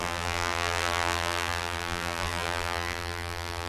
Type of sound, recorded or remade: remade